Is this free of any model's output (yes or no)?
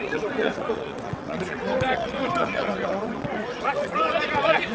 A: no